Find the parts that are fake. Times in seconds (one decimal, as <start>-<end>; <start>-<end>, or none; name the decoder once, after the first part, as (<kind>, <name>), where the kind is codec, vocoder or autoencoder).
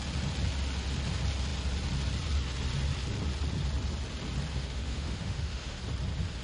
4.5-5.8 (autoencoder, DAC-VAE)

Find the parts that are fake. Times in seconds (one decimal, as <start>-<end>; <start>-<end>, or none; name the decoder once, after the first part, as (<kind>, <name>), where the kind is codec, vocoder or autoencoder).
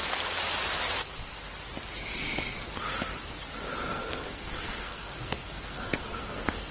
3.9-6.7 (codec, SNAC)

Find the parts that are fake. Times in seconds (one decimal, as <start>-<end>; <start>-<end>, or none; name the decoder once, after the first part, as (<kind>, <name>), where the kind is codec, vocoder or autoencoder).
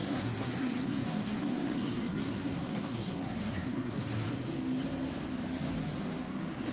0.0-4.0 (codec, SNAC)